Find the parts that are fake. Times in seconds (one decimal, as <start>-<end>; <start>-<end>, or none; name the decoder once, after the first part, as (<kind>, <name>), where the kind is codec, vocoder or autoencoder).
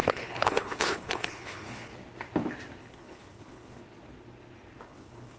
0.0-1.9 (codec, HILCodec); 2.8-3.8; 4.8-5.4